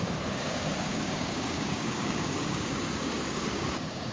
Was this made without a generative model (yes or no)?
no